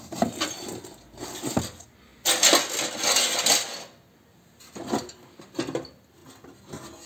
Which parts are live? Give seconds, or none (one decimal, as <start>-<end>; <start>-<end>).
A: 0.0-7.1